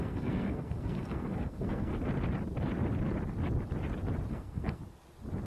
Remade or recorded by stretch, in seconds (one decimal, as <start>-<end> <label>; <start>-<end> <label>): 0.0-1.9 remade; 1.9-4.3 recorded; 4.3-4.8 remade; 4.8-5.5 recorded